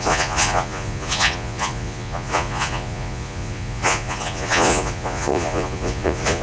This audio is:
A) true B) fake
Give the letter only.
B